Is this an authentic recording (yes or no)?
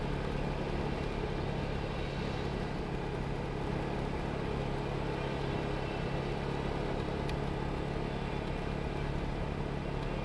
yes